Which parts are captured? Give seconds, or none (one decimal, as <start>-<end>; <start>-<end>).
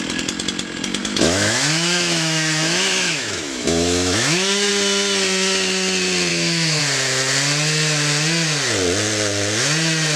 0.0-1.0; 4.7-6.3; 6.8-10.2